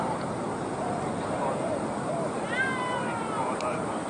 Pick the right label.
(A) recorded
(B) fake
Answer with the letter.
B